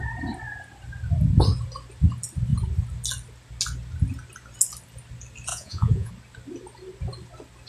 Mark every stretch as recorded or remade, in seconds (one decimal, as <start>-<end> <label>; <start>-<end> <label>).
0.0-5.5 recorded; 5.5-6.1 remade; 6.1-7.7 recorded